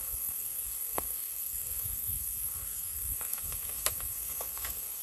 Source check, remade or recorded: remade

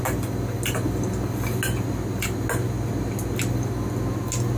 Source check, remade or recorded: recorded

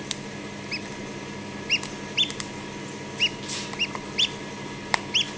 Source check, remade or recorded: recorded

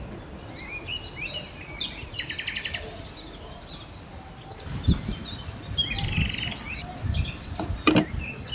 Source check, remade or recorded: remade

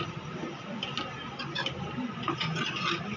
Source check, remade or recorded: recorded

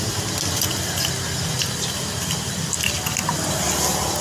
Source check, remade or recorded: recorded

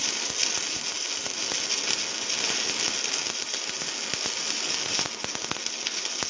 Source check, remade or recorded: recorded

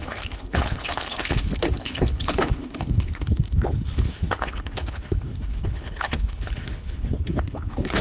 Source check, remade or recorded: remade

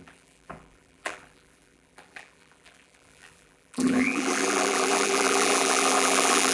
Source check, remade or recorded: remade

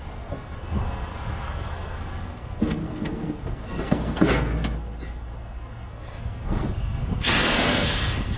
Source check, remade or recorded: remade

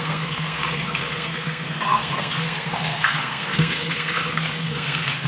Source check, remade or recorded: remade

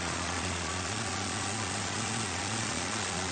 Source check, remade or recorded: remade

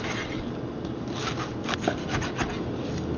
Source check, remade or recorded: recorded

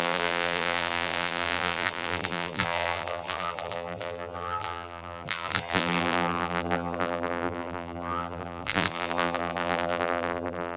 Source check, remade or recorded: remade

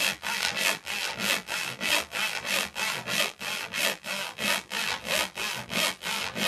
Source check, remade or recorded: remade